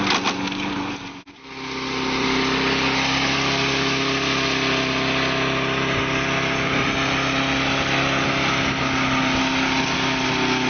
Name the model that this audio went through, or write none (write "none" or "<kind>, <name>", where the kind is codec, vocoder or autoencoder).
none